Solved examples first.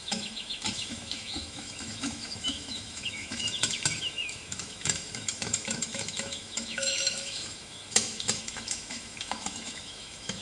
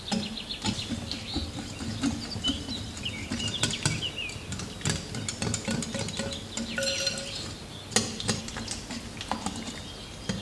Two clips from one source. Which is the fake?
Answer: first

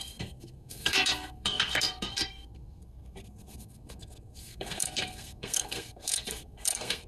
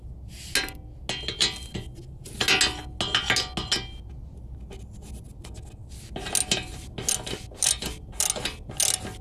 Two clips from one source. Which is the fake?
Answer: first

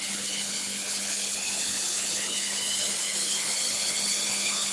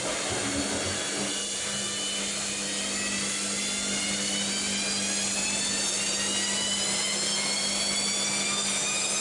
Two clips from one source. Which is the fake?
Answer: first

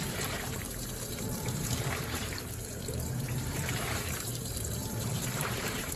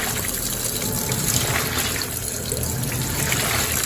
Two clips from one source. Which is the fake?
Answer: first